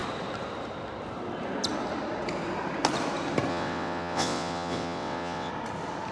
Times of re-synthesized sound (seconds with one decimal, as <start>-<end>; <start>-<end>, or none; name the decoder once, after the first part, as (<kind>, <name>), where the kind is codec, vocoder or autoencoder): 3.5-5.5 (vocoder, WaveNeXt)